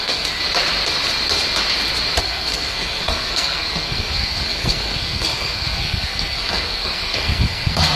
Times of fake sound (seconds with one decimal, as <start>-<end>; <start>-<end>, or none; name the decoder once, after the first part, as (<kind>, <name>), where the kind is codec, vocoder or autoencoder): 0.0-0.4 (codec, SNAC); 2.2-8.0